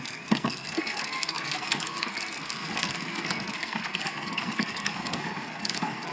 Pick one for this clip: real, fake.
fake